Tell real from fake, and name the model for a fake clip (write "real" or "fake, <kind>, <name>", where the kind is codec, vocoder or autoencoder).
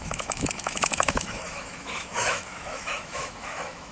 fake, autoencoder, DAC-VAE